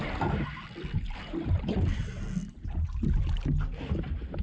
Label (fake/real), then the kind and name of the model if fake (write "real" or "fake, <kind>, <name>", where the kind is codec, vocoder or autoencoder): real